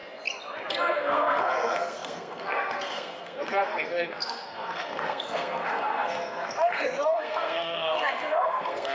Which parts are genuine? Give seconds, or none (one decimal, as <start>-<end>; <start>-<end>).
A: 0.0-0.7